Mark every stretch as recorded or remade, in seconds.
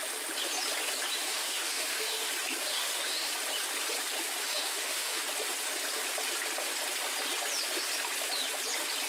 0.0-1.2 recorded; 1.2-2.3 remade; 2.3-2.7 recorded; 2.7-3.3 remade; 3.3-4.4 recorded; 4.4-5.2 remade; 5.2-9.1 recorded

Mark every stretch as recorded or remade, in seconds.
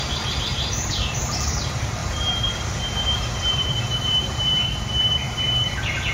0.0-2.0 remade; 2.0-2.6 recorded; 2.6-6.1 remade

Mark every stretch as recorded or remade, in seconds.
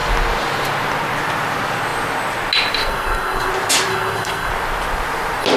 0.0-2.8 recorded; 2.8-3.5 remade; 3.5-3.9 recorded; 3.9-4.5 remade; 4.5-5.6 recorded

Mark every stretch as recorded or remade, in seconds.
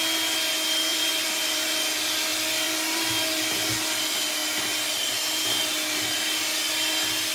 0.0-0.9 recorded; 0.9-1.7 remade; 1.7-2.3 recorded; 2.3-3.4 remade; 3.4-7.3 recorded